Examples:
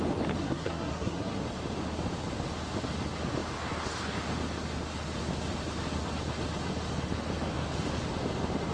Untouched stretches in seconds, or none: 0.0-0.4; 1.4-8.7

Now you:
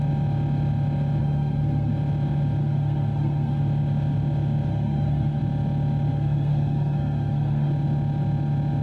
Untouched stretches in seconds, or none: 0.0-1.2; 1.9-2.6; 3.6-4.7; 5.4-6.1; 7.7-8.8

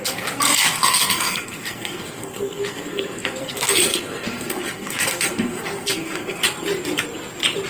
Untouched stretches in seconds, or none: 6.4-7.7